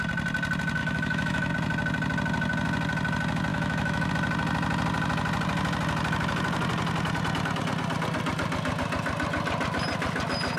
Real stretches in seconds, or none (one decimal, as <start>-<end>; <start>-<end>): 0.0-0.8; 1.5-3.5; 4.1-10.6